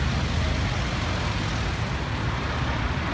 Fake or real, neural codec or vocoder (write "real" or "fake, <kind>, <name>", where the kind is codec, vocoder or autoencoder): real